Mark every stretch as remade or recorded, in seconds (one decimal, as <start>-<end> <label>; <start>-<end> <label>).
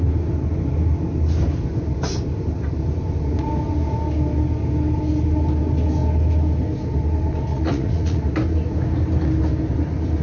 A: 0.0-7.5 recorded; 7.5-8.2 remade; 8.2-10.2 recorded